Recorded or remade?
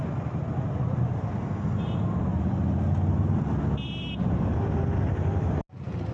recorded